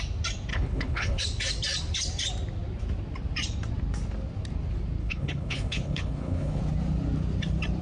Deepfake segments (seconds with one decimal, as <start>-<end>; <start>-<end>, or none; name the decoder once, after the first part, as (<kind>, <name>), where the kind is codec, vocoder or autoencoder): 0.5-1.2 (codec, HILCodec); 5.0-6.6